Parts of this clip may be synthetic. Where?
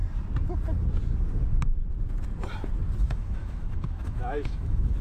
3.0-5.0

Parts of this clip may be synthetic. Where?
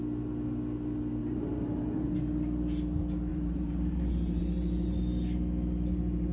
1.2-2.1; 3.3-4.4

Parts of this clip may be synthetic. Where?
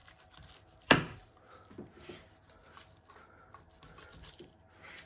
none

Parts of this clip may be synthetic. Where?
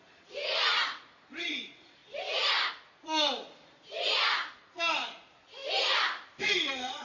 0.0-2.0; 2.7-3.4; 4.5-5.6; 6.4-7.0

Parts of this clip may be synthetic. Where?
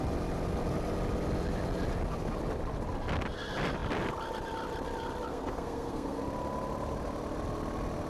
5.3-6.2